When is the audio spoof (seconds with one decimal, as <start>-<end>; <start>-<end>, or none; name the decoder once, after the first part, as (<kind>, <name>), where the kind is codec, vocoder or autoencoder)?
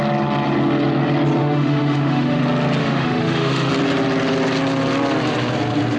1.4-2.4 (autoencoder, DAC-VAE); 2.8-3.7